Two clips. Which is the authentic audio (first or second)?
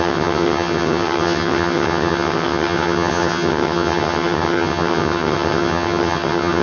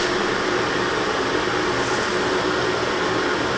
second